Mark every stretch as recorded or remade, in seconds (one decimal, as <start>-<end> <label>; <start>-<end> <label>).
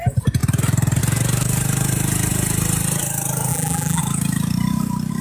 0.0-3.5 recorded; 3.5-4.0 remade; 4.0-5.2 recorded